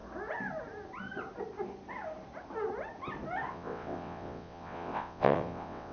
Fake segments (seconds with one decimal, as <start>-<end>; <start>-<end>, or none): 3.5-5.9